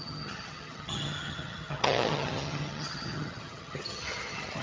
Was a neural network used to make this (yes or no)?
yes